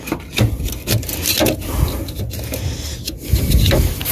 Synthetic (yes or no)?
no